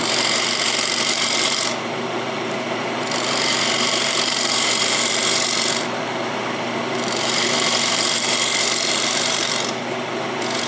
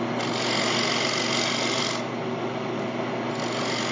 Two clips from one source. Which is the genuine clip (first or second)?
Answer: second